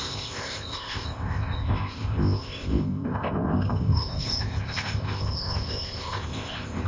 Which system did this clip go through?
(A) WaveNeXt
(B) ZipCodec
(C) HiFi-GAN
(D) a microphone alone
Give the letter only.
B